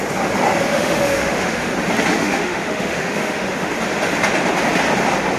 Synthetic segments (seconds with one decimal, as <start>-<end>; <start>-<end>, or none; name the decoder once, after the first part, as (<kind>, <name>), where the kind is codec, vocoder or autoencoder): 0.7-1.7 (autoencoder, DAC-VAE); 2.1-3.7